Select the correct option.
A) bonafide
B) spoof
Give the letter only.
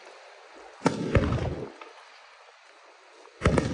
A